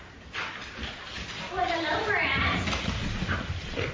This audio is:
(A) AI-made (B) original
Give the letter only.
B